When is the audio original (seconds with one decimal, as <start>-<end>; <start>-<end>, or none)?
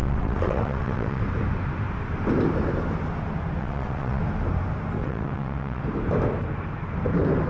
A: 1.2-3.6; 4.2-5.0; 5.8-7.5